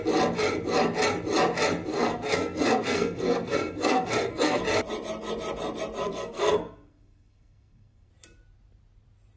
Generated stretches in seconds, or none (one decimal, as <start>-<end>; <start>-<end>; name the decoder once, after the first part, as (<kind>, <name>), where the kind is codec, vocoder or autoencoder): 1.9-4.6 (codec, SNAC); 6.0-8.1